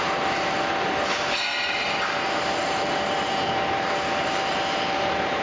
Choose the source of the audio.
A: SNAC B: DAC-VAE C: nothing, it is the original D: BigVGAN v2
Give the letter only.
D